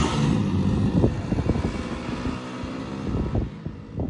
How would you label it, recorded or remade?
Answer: recorded